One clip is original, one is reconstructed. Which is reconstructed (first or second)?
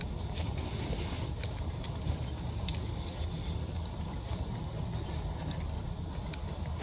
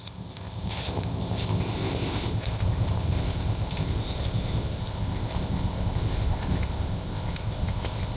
second